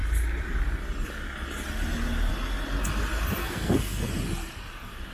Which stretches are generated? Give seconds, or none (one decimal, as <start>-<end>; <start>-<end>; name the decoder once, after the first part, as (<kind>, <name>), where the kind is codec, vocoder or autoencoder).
3.4-4.0 (codec, SNAC)